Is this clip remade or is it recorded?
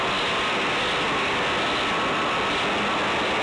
recorded